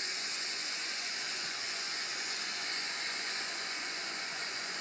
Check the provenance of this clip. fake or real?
fake